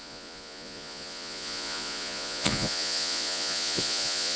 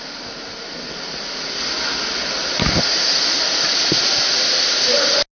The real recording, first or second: second